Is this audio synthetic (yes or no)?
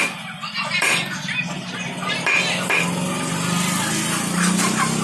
no